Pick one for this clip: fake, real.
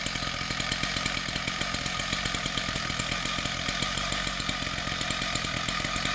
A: real